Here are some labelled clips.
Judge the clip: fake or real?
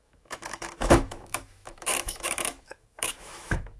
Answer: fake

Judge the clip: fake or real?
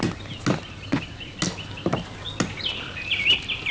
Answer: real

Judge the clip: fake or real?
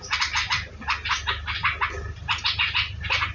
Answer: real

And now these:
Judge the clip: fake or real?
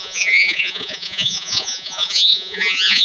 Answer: fake